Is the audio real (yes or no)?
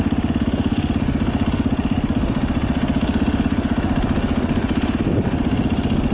yes